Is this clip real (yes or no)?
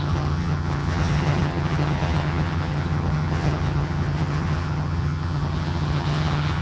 no